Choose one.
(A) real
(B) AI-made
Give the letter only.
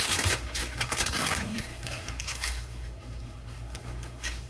B